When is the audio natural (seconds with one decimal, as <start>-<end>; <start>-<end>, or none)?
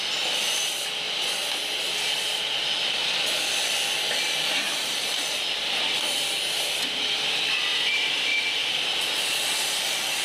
0.0-1.4; 2.4-4.7; 5.3-7.7; 8.2-10.2